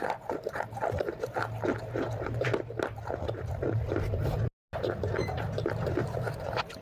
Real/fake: real